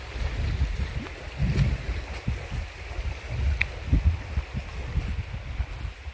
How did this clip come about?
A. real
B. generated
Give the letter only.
A